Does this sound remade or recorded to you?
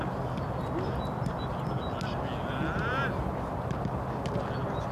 recorded